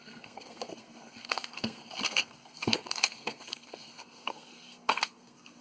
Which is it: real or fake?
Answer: fake